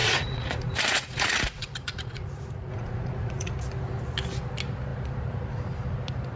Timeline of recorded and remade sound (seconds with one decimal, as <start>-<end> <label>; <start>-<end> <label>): 0.0-3.5 remade; 3.5-6.4 recorded